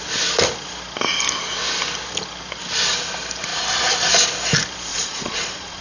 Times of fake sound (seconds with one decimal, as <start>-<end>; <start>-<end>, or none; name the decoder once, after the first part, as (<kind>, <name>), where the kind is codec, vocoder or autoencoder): 4.9-5.8 (vocoder, Vocos)